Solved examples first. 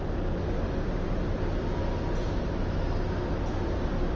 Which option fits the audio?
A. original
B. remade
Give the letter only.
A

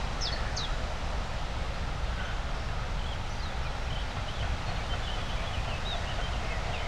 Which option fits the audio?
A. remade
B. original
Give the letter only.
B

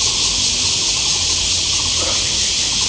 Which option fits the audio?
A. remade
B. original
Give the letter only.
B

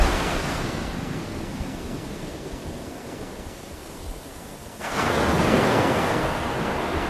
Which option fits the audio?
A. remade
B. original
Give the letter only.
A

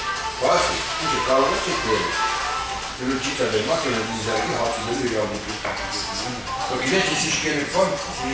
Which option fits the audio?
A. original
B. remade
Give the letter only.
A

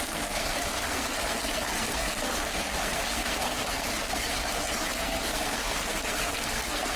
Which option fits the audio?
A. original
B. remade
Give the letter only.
B